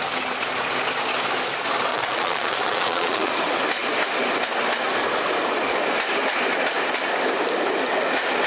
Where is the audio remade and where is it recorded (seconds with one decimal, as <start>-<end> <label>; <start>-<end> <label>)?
0.0-1.9 recorded; 1.9-3.3 remade; 3.3-8.5 recorded